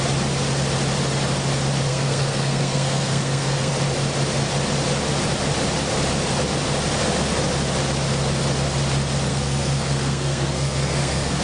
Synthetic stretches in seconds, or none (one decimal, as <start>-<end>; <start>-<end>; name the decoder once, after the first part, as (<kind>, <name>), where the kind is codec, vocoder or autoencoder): 1.9-3.7 (codec, SNAC); 9.3-11.4